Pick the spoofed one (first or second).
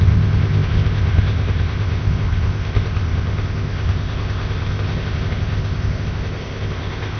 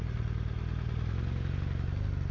first